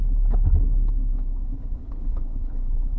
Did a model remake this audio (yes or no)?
yes